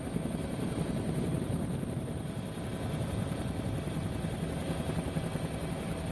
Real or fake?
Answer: fake